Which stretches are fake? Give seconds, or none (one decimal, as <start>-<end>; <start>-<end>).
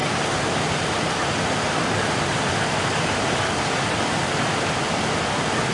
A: none